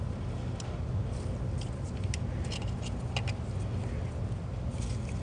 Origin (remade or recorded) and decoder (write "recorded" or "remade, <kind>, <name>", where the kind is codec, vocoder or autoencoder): recorded